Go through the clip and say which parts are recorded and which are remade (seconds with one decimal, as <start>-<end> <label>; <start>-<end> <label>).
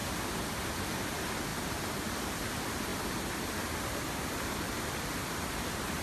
0.0-6.0 recorded